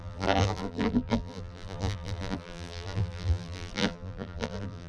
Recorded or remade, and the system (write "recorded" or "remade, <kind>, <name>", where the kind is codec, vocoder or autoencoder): remade, vocoder, BigVGAN v2